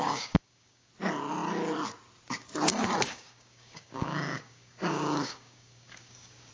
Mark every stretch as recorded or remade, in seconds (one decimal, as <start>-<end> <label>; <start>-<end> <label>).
0.0-0.9 remade; 0.9-2.7 recorded; 2.7-6.5 remade